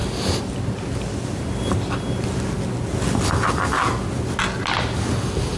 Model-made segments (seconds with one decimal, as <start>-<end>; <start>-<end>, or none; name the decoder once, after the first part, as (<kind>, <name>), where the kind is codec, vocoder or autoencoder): none